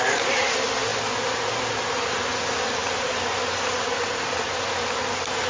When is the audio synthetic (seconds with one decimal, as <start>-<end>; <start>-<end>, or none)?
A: none